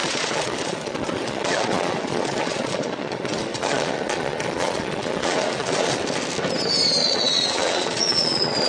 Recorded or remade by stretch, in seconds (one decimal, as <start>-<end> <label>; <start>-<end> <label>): 0.0-6.0 remade; 6.0-7.0 recorded; 7.0-8.7 remade

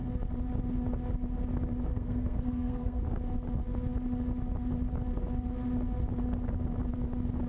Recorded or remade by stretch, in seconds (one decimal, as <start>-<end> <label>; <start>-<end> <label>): 0.0-1.9 recorded; 1.9-3.0 remade; 3.0-7.5 recorded

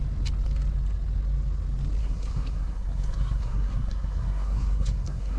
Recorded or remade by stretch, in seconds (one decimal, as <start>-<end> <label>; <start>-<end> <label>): 0.0-2.0 recorded; 2.0-5.4 remade

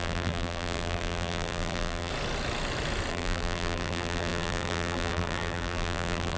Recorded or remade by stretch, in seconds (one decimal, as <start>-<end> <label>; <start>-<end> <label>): 0.0-2.1 remade; 2.1-3.1 recorded; 3.1-6.4 remade

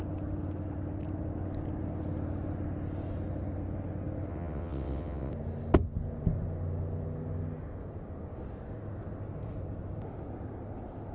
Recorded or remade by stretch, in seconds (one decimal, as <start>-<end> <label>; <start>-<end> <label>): 0.0-4.3 recorded; 4.3-5.3 remade; 5.3-11.1 recorded

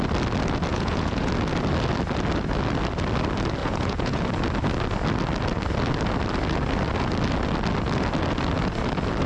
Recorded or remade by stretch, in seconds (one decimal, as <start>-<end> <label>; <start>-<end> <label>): 0.0-0.7 recorded; 0.7-1.3 remade; 1.3-3.6 recorded; 3.6-4.2 remade; 4.2-9.3 recorded

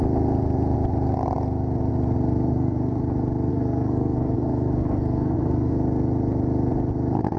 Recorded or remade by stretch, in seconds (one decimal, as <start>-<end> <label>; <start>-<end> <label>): 0.0-2.5 recorded; 2.5-3.0 remade; 3.0-3.5 recorded; 3.5-5.7 remade; 5.7-7.4 recorded